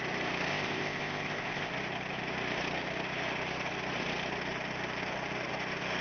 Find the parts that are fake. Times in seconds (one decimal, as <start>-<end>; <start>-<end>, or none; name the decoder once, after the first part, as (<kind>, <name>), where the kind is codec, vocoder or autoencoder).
0.5-1.7 (codec, ZipCodec)